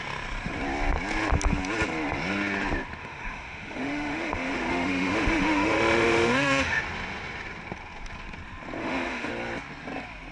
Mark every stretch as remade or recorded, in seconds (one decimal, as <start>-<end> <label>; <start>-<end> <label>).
0.0-3.0 recorded; 3.0-6.8 remade; 6.8-8.8 recorded; 8.8-9.3 remade; 9.3-10.3 recorded